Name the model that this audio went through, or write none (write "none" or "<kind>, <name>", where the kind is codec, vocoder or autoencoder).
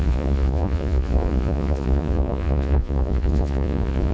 vocoder, Vocos